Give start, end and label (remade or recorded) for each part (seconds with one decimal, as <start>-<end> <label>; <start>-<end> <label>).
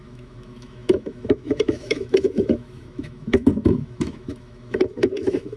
0.0-5.6 remade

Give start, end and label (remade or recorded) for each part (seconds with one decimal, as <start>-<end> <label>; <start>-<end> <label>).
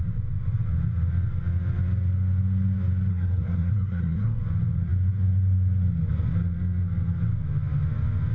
0.0-3.1 recorded; 3.1-4.4 remade; 4.4-8.3 recorded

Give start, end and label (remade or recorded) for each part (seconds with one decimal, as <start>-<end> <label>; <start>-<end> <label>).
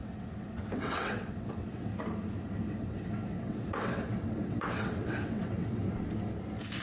0.0-1.9 remade; 1.9-2.7 recorded; 2.7-5.8 remade; 5.8-6.8 recorded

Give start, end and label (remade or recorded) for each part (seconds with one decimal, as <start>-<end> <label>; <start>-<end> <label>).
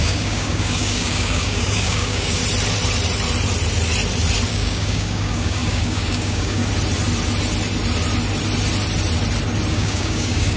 0.0-2.4 remade; 2.4-4.5 recorded; 4.5-6.6 remade; 6.6-9.7 recorded; 9.7-10.6 remade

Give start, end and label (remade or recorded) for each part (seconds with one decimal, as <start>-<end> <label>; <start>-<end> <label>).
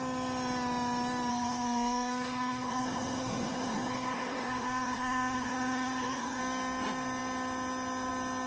0.0-1.3 recorded; 1.3-6.4 remade; 6.4-8.5 recorded